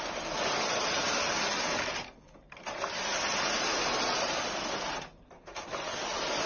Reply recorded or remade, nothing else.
recorded